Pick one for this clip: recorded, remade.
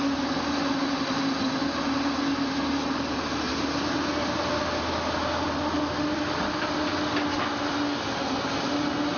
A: recorded